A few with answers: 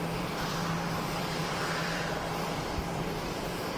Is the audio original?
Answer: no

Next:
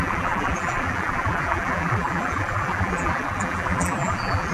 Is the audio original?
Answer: no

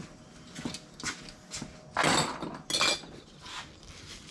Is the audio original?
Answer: yes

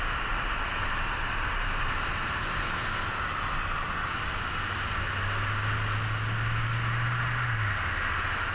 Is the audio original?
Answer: yes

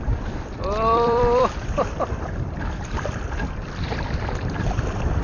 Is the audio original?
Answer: no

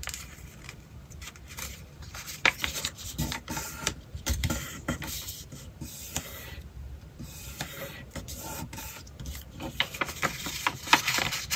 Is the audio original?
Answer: no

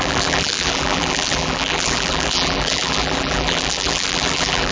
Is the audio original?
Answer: no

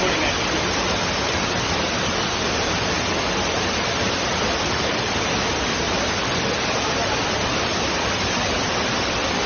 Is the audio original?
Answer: no